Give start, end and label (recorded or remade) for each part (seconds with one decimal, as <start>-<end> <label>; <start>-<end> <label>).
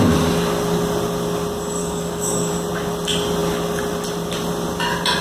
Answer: 0.0-1.8 recorded; 1.8-2.5 remade; 2.5-5.2 recorded